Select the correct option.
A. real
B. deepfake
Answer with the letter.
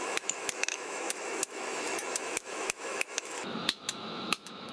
B